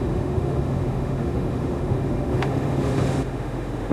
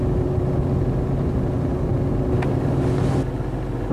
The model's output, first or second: first